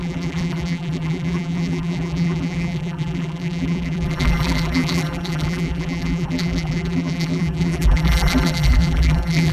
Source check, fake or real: fake